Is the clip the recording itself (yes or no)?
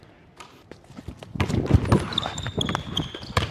yes